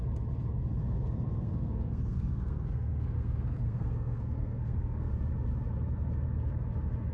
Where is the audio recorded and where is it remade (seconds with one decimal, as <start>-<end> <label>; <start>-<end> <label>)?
0.0-0.8 recorded; 0.8-5.1 remade; 5.1-7.1 recorded